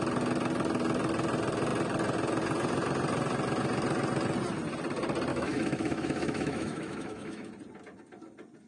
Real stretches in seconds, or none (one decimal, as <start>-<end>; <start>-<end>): 0.0-5.3; 7.5-8.7